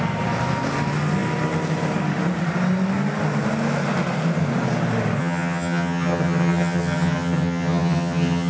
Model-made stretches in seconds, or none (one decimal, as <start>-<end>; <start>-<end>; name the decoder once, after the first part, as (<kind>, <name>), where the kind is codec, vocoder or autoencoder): 5.2-8.5 (vocoder, HiFi-GAN)